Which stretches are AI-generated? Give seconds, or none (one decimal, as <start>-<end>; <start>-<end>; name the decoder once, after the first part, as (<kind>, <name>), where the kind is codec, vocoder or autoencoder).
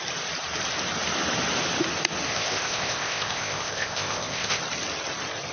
2.3-4.6 (codec, ZipCodec)